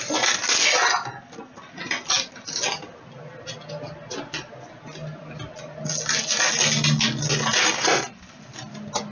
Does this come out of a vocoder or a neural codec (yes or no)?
no